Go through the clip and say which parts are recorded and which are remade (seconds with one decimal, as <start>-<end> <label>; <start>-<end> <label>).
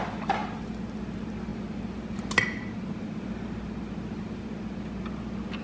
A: 0.0-5.6 recorded